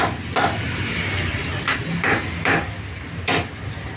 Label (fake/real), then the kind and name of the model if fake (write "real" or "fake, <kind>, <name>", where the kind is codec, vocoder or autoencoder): real